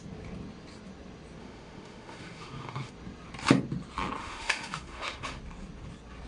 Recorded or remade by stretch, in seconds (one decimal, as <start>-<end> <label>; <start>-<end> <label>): 0.0-1.4 recorded; 1.4-2.9 remade; 2.9-4.2 recorded; 4.2-5.4 remade; 5.4-6.3 recorded